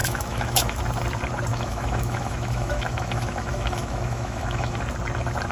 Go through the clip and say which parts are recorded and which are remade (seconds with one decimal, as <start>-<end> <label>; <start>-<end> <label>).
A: 0.0-0.8 remade; 0.8-1.5 recorded; 1.5-4.8 remade; 4.8-5.5 recorded